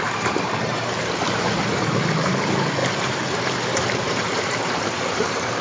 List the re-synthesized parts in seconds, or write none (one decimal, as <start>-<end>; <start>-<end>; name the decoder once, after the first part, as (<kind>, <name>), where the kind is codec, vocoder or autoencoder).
0.0-5.6 (vocoder, BigVGAN v2)

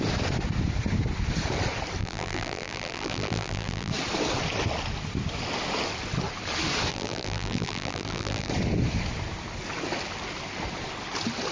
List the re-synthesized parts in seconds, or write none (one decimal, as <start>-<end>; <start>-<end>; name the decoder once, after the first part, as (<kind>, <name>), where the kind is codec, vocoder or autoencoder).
2.0-3.9 (vocoder, BigVGAN v2); 6.9-8.5

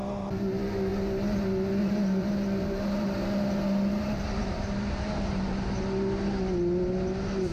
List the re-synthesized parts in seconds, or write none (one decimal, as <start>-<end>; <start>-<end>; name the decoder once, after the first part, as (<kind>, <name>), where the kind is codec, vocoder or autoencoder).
1.8-5.4 (vocoder, BigVGAN v2)

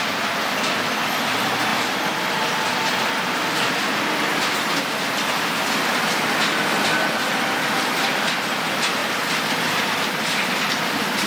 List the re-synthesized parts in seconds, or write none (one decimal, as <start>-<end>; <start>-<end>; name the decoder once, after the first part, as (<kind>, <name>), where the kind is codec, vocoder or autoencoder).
2.7-4.7 (vocoder, BigVGAN v2); 9.0-10.6